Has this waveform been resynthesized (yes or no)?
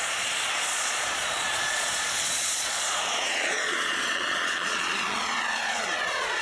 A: yes